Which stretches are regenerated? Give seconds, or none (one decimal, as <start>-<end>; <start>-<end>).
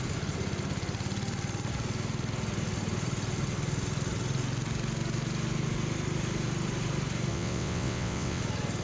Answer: 7.3-8.4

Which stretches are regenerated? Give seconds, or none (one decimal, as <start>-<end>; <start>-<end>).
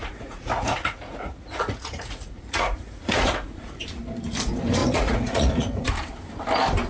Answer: 0.0-3.8; 4.8-5.9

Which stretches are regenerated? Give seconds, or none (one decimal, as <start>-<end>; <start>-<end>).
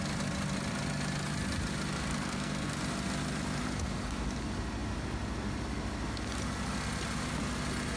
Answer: 2.1-2.8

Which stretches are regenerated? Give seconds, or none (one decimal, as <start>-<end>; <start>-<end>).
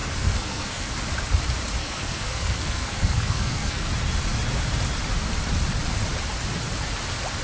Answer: 0.0-0.9; 1.8-3.9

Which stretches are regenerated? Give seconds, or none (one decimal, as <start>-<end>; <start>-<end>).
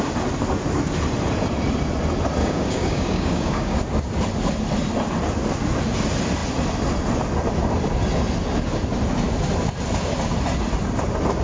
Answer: 2.4-3.8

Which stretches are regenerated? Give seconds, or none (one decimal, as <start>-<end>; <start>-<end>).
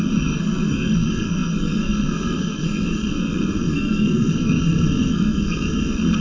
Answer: 0.0-6.2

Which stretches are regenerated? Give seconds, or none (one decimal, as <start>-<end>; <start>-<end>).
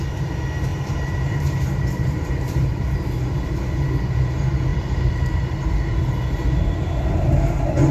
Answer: 0.7-2.7; 4.7-5.9